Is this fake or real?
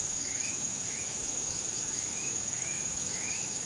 fake